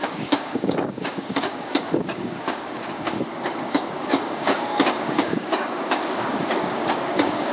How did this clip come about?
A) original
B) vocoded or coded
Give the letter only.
B